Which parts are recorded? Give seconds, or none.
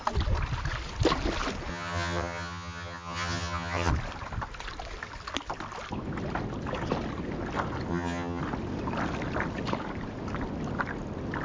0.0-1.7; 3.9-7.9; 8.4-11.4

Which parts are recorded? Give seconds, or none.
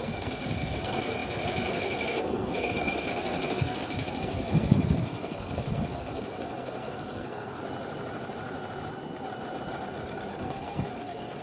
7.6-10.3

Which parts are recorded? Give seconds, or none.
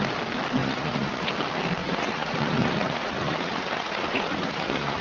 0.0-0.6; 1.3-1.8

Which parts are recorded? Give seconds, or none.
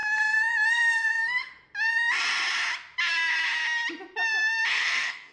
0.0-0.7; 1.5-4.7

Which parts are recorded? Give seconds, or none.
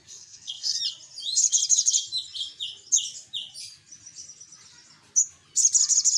0.8-6.2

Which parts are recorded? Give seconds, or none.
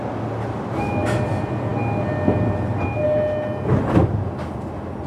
1.7-4.0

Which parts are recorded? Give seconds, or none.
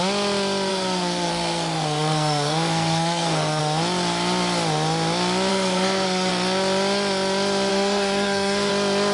0.0-0.7; 3.6-5.5; 6.3-7.7; 8.7-9.1